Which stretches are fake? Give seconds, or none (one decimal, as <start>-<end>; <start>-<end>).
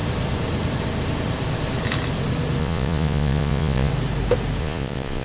2.6-3.9; 4.6-5.2